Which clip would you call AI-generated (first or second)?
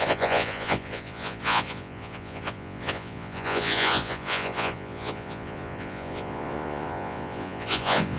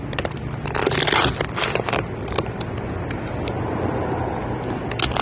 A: first